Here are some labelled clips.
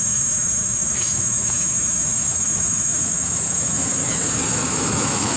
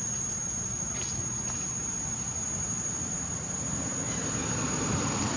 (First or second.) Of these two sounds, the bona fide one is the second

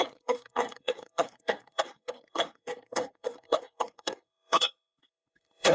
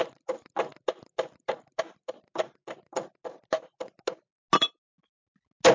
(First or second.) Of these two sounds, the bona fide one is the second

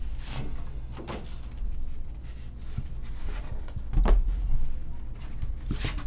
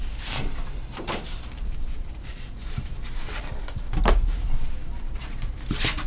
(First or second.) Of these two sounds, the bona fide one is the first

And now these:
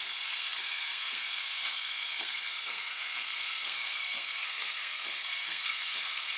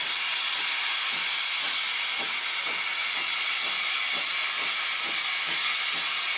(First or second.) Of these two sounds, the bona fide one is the second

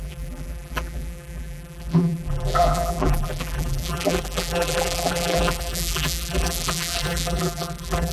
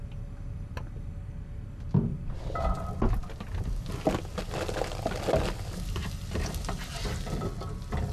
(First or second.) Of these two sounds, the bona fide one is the second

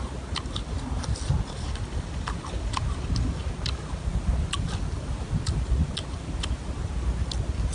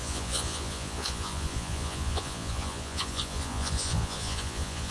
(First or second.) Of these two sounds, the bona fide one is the first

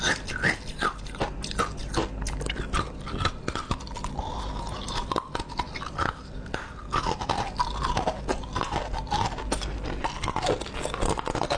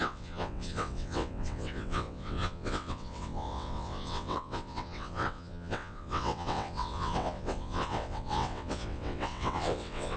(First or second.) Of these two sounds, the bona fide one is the first